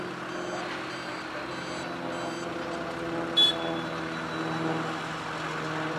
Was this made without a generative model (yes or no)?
yes